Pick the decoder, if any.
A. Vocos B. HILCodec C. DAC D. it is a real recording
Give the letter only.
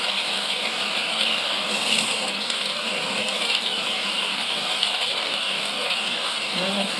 C